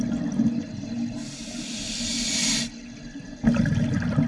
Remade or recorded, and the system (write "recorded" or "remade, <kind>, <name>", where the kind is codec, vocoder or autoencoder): recorded